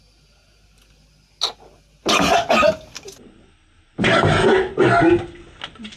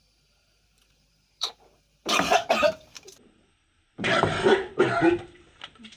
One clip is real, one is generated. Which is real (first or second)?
first